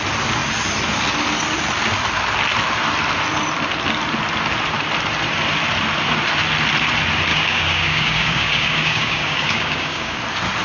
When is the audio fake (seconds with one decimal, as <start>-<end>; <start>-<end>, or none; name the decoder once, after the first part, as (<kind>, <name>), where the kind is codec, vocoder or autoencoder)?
7.3-10.2 (codec, DAC)